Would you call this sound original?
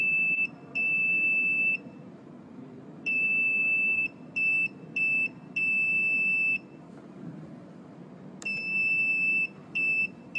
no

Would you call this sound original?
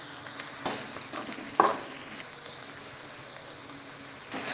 yes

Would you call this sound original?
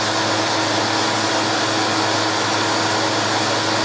yes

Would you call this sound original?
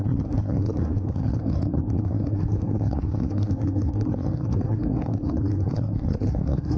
no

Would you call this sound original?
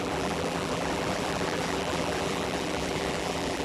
no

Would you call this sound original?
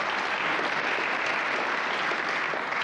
yes